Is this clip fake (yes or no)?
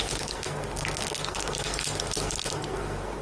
yes